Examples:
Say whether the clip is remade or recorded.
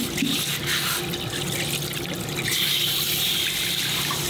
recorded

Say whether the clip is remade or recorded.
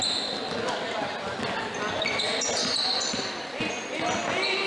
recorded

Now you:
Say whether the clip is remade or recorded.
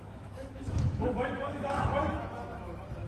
remade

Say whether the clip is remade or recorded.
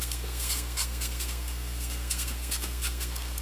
remade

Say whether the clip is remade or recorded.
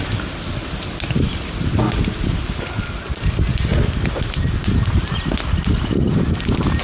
recorded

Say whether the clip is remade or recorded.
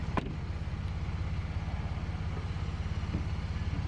recorded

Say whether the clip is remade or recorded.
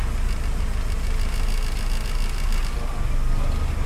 recorded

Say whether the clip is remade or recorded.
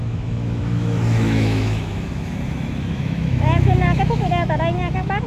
remade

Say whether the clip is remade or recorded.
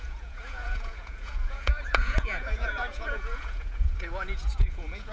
remade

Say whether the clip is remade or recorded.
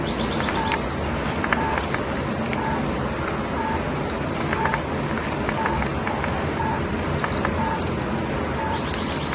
recorded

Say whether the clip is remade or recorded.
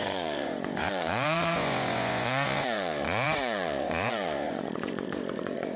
remade